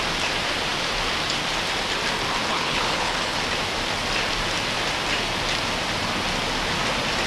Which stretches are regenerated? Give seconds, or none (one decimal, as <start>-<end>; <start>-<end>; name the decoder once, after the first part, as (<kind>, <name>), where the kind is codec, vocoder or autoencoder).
2.5-3.4 (codec, HILCodec)